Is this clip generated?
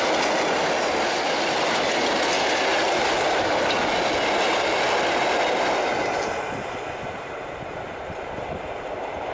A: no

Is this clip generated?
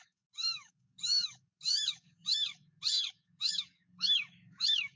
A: yes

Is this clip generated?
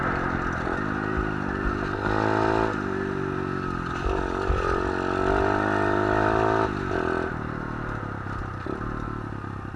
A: no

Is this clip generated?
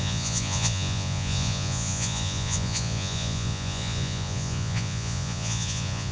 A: yes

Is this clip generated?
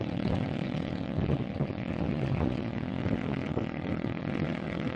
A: yes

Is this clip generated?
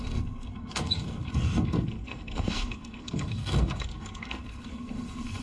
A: yes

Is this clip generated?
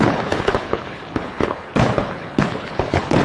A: yes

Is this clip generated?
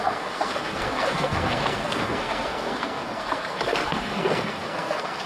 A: yes